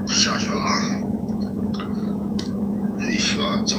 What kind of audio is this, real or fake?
fake